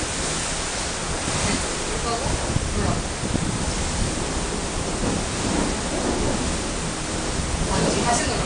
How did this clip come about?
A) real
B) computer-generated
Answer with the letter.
A